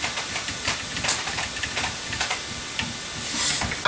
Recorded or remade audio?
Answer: recorded